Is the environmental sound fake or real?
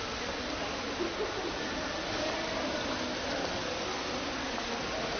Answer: real